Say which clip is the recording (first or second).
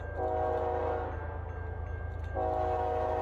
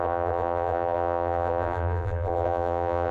first